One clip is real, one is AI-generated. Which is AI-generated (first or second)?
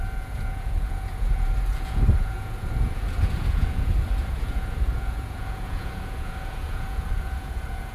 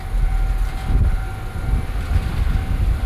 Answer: first